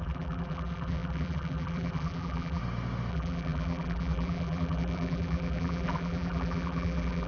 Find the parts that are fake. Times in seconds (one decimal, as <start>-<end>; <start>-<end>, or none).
0.0-2.6; 3.1-7.3